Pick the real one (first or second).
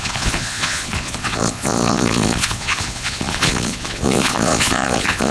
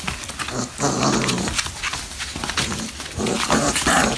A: second